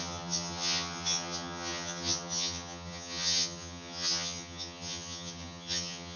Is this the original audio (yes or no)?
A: no